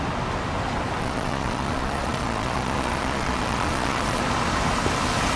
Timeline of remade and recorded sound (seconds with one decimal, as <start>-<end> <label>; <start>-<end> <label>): 0.0-1.0 recorded; 1.0-4.2 remade; 4.2-5.4 recorded